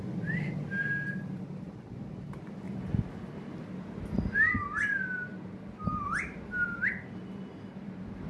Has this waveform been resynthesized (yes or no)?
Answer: no